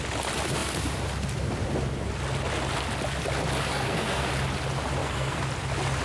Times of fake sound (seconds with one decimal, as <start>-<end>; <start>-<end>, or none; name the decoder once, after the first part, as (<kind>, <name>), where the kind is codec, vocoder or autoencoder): 3.7-4.3 (codec, SNAC); 5.0-5.5